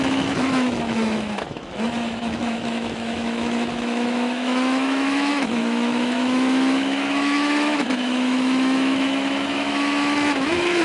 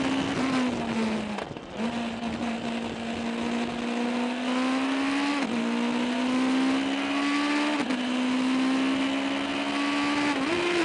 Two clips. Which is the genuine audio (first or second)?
second